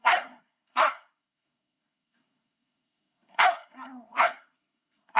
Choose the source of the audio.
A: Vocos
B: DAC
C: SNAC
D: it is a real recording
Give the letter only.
C